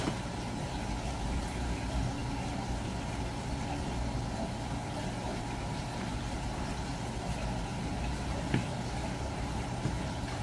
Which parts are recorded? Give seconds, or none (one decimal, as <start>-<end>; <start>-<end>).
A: 2.2-5.6; 6.9-9.2